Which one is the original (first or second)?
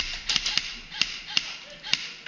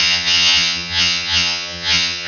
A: first